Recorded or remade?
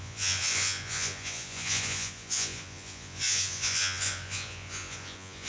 remade